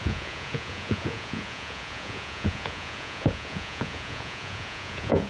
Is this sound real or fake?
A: fake